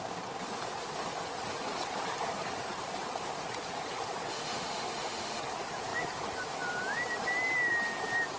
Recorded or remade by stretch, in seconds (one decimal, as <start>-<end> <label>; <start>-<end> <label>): 0.0-4.3 recorded; 4.3-5.4 remade; 5.4-8.4 recorded